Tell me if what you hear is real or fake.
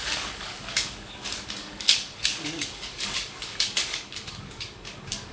fake